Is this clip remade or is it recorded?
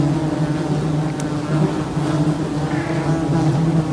recorded